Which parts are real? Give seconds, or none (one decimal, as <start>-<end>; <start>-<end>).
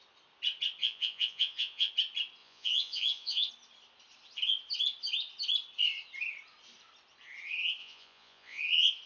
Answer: 0.0-0.8; 1.9-2.4; 3.5-7.8; 8.6-9.1